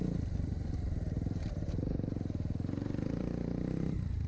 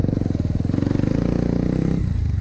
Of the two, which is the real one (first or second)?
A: second